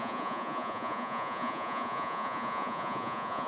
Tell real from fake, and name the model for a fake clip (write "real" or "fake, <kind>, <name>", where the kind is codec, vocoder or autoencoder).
fake, vocoder, Vocos